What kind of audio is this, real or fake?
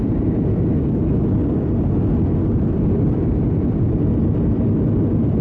real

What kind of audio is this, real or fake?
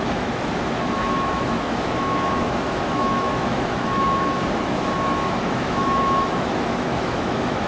fake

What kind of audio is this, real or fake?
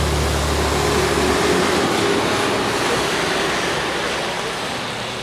real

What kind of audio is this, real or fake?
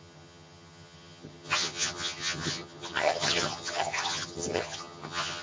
fake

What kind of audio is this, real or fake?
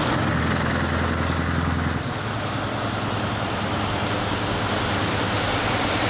real